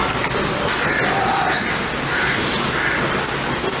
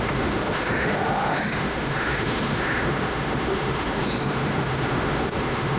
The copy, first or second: second